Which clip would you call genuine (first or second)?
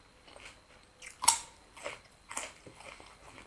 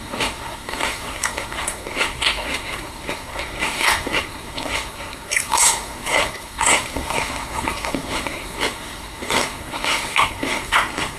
first